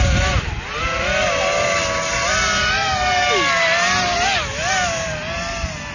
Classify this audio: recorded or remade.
recorded